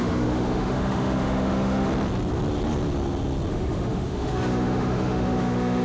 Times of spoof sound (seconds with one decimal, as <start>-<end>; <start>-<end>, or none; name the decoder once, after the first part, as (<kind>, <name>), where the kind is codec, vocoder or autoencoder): 0.0-1.9 (autoencoder, DAC-VAE); 3.5-5.8